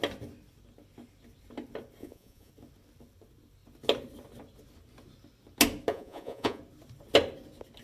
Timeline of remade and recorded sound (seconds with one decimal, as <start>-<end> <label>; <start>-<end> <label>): 0.0-2.0 recorded; 2.0-2.5 remade; 2.5-5.9 recorded; 5.9-6.6 remade; 6.6-7.8 recorded